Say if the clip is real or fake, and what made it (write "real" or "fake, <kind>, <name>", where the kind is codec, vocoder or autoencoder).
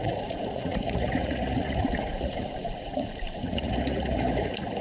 fake, vocoder, Vocos